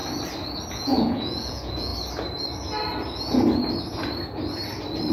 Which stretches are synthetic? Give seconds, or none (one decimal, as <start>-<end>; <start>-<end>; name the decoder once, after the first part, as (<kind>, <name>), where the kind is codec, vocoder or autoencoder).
0.7-1.9 (vocoder, Vocos)